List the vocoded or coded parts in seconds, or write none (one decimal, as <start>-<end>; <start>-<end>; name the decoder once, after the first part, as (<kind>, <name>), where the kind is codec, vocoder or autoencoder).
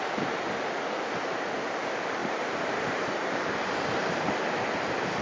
2.2-4.3 (vocoder, BigVGAN v2)